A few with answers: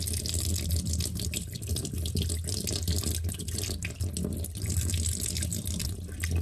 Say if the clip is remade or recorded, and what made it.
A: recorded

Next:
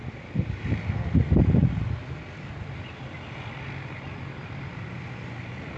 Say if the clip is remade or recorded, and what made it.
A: recorded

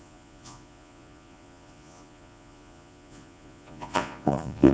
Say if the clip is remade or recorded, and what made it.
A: remade, vocoder, Vocos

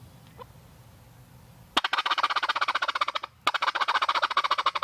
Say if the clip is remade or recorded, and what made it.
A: recorded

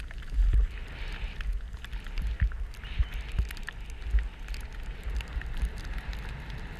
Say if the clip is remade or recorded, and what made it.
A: recorded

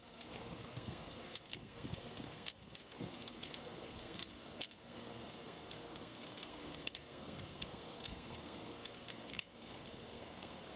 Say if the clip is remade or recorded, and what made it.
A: remade, codec, SNAC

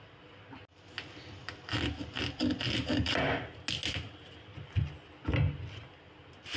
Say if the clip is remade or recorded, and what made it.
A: recorded